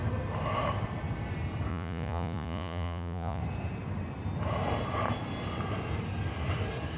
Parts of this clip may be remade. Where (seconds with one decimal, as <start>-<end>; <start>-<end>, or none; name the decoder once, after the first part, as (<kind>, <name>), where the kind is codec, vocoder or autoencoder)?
1.7-3.4 (vocoder, Vocos)